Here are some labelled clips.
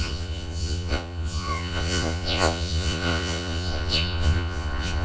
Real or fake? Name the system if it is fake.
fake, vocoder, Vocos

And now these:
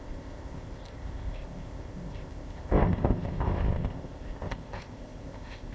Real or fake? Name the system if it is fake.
fake, codec, ZipCodec